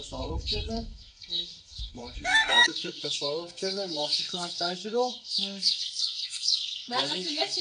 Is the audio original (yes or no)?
no